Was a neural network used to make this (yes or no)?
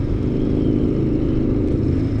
no